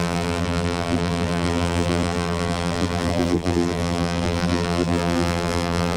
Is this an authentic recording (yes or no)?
no